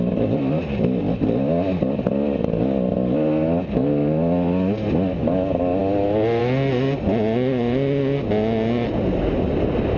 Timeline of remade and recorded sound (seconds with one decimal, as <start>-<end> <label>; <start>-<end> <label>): 0.0-10.0 recorded